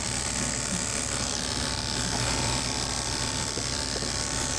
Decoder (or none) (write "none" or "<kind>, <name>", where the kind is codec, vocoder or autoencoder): none